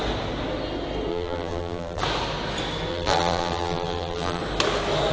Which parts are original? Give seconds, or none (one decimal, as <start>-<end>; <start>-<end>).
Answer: 0.0-1.1; 2.0-2.9; 4.4-5.1